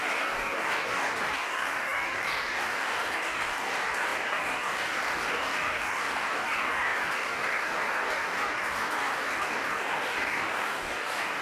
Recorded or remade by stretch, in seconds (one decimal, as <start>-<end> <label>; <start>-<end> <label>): 0.0-11.4 remade